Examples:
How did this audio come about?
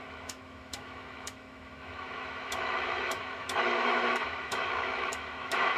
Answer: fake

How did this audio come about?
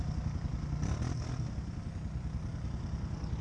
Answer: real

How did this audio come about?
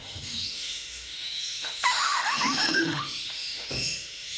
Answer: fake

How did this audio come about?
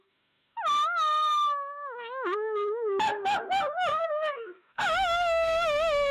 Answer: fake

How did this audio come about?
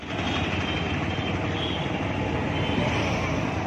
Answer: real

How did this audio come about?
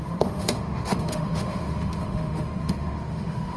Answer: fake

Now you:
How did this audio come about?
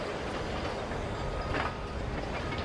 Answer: real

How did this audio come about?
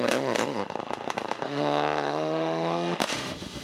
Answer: fake